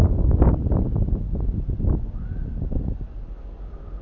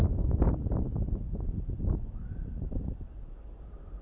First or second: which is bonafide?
first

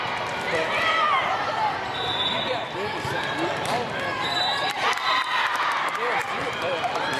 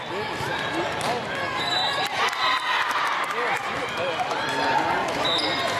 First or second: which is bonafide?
second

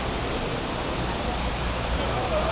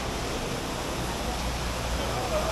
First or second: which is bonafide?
second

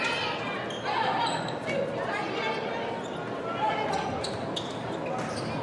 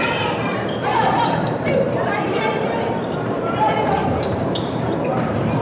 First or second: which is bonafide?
first